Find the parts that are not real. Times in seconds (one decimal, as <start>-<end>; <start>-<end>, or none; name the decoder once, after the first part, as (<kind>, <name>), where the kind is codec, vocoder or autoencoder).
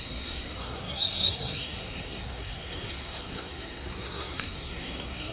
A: 0.0-5.3 (codec, SNAC)